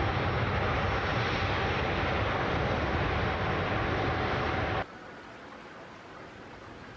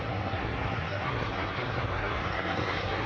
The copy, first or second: second